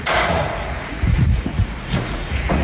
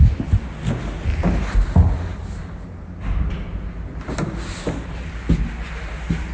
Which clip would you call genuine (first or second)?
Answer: second